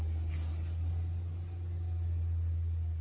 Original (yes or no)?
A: yes